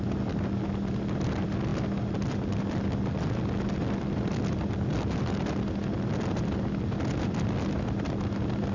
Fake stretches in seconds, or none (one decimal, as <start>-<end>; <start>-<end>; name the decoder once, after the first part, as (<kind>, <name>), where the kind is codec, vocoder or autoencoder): none